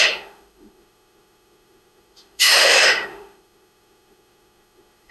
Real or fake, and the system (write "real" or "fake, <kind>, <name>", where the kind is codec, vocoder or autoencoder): fake, autoencoder, DAC-VAE